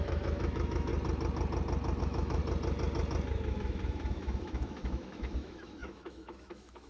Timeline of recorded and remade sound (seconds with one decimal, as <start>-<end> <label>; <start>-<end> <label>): 0.0-0.9 remade; 0.9-2.0 recorded; 2.0-2.4 remade; 2.4-3.5 recorded; 3.5-6.9 remade